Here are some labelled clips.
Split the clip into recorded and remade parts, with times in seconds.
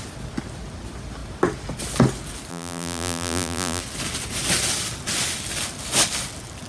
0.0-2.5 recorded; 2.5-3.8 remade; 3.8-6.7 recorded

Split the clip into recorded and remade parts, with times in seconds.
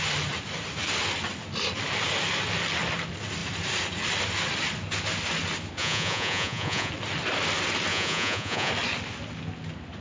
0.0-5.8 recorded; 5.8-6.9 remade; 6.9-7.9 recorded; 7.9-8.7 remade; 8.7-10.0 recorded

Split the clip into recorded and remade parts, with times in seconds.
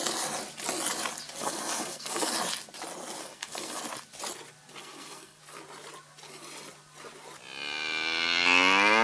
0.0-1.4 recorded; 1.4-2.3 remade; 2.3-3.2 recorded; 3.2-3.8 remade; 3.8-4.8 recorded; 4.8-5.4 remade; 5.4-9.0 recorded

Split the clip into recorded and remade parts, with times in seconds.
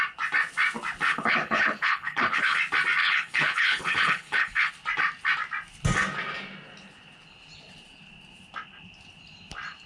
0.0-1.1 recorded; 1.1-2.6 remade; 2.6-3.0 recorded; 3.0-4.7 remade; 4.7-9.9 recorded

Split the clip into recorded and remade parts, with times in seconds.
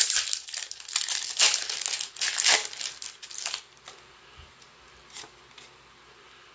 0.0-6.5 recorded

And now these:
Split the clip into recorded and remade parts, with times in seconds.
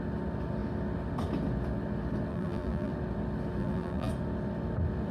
0.0-2.3 recorded; 2.3-2.9 remade; 2.9-3.6 recorded; 3.6-4.1 remade; 4.1-5.1 recorded